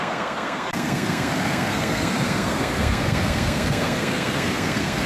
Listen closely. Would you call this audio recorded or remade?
remade